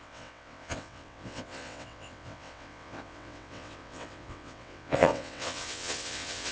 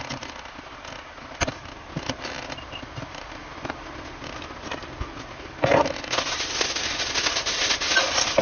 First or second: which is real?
second